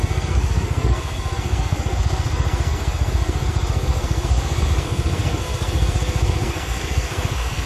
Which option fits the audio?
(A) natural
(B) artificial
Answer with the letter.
B